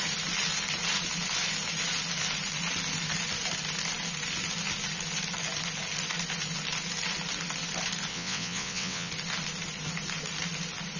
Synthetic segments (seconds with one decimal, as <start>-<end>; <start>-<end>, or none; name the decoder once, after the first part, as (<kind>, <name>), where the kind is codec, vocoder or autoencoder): 8.1-9.1 (vocoder, WaveNeXt)